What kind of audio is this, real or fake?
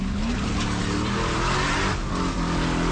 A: real